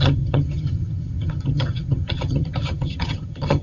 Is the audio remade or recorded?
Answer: remade